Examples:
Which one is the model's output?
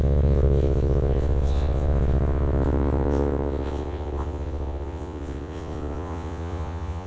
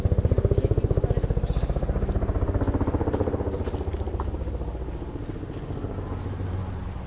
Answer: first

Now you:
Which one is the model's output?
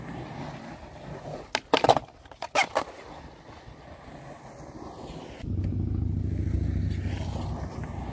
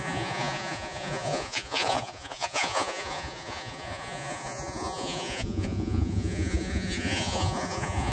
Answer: second